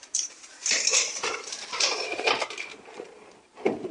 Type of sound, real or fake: fake